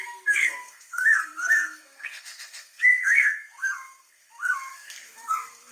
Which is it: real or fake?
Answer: fake